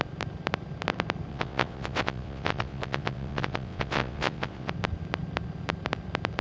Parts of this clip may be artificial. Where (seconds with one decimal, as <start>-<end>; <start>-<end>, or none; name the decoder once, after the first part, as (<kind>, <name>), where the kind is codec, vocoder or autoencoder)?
1.3-4.7 (vocoder, WaveNeXt)